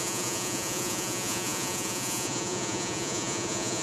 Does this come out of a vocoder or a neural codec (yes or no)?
yes